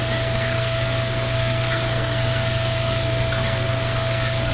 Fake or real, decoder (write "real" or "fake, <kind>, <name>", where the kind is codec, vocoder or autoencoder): fake, codec, SNAC